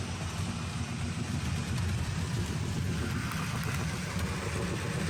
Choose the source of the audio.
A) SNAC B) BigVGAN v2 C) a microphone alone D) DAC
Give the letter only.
C